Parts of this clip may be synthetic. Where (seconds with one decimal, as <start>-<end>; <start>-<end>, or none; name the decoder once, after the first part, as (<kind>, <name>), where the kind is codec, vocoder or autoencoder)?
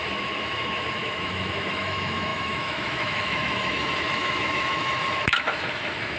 0.0-6.2 (autoencoder, DAC-VAE)